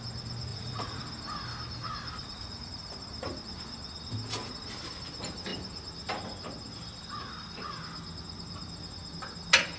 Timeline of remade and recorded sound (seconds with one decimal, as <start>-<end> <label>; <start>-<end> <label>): 0.0-0.5 recorded; 0.5-1.0 remade; 1.0-2.2 recorded; 2.2-2.9 remade; 2.9-9.8 recorded